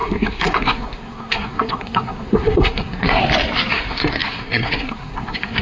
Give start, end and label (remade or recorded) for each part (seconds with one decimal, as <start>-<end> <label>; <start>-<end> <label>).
0.0-3.2 remade; 3.2-3.7 recorded; 3.7-5.6 remade